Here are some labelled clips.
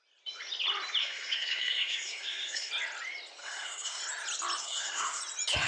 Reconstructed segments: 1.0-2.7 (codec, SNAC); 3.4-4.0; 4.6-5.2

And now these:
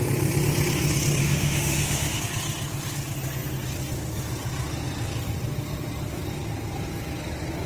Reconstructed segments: 1.2-2.2 (autoencoder, DAC-VAE)

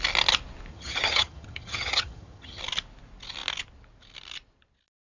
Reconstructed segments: 0.7-2.6 (vocoder, HiFi-GAN)

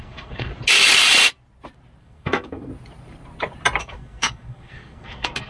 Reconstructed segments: 0.0-0.5 (codec, SNAC); 2.0-2.7; 3.8-5.5